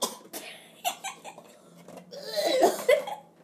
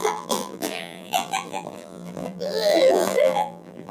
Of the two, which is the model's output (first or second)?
second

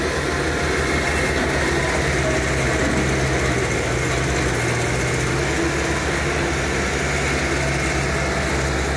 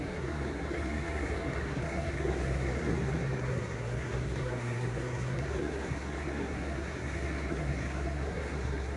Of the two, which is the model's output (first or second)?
second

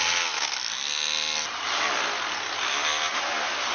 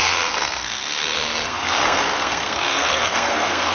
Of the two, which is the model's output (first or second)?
second